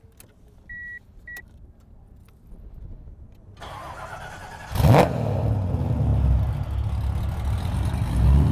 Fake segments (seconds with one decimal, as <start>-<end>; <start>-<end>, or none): 4.4-5.1